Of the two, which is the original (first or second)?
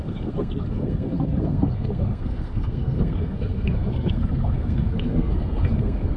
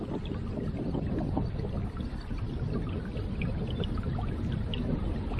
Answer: second